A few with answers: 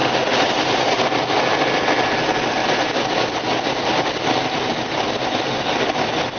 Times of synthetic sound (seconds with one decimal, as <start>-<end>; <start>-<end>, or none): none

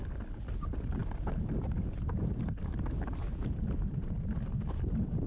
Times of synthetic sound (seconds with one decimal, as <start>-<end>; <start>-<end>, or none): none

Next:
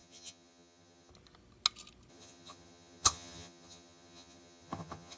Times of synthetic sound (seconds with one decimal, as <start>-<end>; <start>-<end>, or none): 0.0-1.1; 2.1-5.2

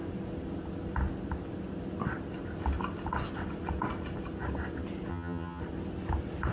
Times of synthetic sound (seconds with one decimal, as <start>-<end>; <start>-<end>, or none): 5.1-5.6